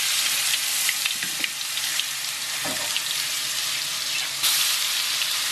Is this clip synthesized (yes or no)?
no